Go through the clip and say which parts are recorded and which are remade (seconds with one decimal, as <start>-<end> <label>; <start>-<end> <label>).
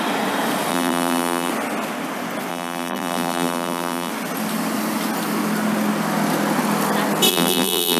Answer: 0.0-0.7 recorded; 0.7-1.5 remade; 1.5-2.5 recorded; 2.5-4.1 remade; 4.1-7.3 recorded; 7.3-8.0 remade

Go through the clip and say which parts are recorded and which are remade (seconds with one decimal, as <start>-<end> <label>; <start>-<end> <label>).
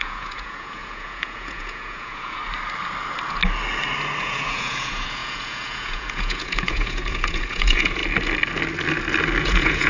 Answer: 0.0-2.4 remade; 2.4-4.2 recorded; 4.2-8.0 remade; 8.0-9.4 recorded; 9.4-9.9 remade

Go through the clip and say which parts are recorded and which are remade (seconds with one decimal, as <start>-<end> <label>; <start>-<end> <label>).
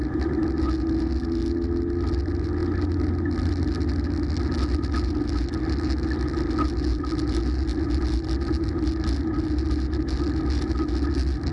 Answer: 0.0-11.5 recorded